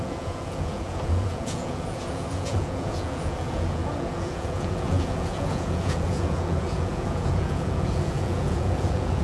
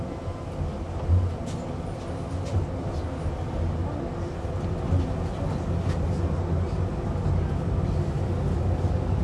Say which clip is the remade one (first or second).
first